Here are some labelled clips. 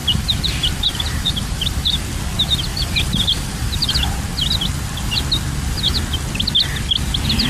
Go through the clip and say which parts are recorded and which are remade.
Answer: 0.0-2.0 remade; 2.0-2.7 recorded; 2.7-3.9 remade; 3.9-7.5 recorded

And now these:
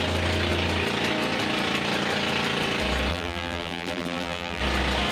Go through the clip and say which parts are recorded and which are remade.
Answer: 0.0-3.1 recorded; 3.1-4.6 remade; 4.6-5.1 recorded